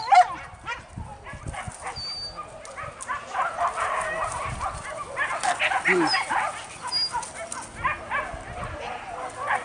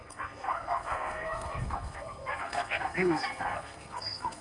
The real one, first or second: first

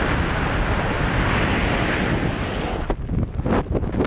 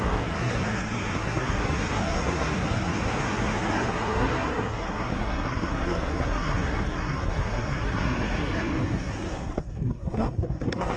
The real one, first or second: first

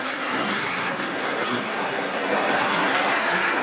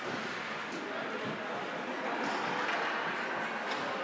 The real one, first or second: second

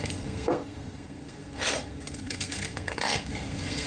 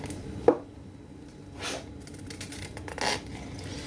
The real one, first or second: second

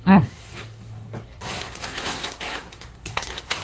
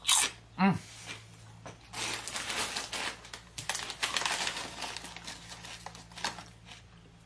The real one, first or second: second